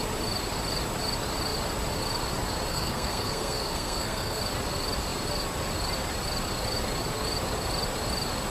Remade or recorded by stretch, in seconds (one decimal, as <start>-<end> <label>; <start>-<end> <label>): 0.0-2.7 recorded; 2.7-4.4 remade; 4.4-8.5 recorded